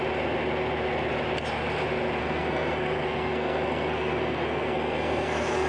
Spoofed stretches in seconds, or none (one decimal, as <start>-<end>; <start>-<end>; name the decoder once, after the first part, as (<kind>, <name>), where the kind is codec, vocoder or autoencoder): 2.2-5.7 (codec, SNAC)